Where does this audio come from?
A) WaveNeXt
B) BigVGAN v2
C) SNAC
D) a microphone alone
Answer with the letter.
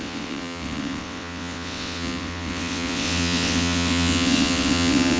A